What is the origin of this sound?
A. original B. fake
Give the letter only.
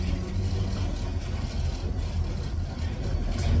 A